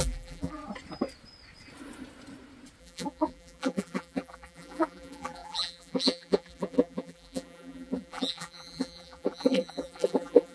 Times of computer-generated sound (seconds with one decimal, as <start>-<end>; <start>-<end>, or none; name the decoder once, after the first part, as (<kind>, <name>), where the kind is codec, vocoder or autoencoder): 0.0-0.6 (vocoder, BigVGAN v2); 2.8-10.5